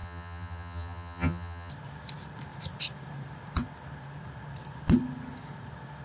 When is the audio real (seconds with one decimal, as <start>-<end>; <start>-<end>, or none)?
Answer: 1.7-6.0